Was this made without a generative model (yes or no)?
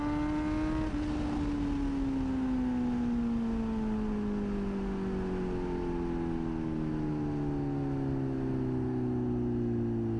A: yes